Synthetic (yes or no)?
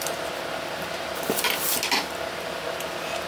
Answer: no